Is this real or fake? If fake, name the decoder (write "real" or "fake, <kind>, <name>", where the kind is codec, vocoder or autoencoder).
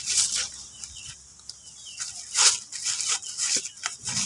real